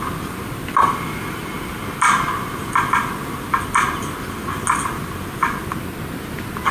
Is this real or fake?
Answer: real